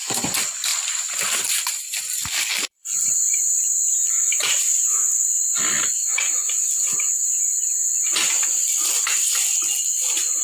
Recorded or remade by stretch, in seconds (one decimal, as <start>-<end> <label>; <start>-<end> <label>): 0.0-0.7 remade; 0.7-1.4 recorded; 1.4-4.5 remade; 4.5-8.9 recorded; 8.9-10.4 remade